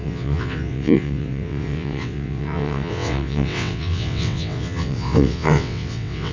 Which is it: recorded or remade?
remade